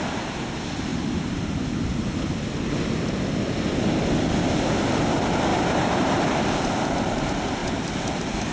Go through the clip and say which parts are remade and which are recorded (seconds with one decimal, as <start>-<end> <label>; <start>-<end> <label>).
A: 0.0-5.5 recorded; 5.5-6.3 remade; 6.3-8.5 recorded